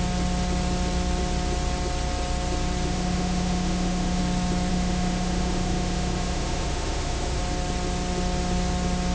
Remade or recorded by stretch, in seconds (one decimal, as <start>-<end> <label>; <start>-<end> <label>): 0.0-2.9 recorded; 2.9-4.2 remade; 4.2-4.7 recorded; 4.7-7.4 remade; 7.4-9.1 recorded